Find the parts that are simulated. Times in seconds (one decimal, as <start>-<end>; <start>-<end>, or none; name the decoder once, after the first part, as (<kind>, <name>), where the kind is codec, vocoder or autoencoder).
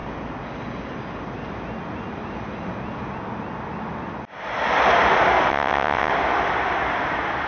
5.5-6.1 (vocoder, WaveNeXt)